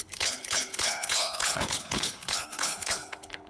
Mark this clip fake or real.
fake